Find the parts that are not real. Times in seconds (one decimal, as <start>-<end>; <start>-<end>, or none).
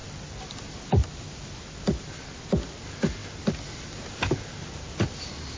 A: 0.0-0.6